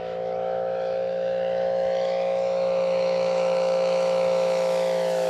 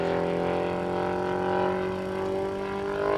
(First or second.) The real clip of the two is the second